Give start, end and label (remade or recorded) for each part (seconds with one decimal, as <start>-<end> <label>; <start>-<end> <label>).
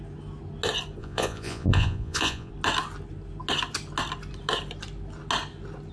0.0-1.0 recorded; 1.0-2.5 remade; 2.5-5.9 recorded